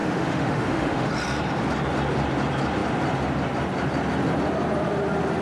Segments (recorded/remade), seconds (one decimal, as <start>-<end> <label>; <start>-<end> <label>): 0.0-1.1 remade; 1.1-5.4 recorded